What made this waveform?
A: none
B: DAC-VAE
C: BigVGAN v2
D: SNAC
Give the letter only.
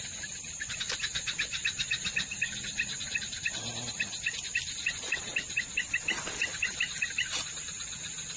A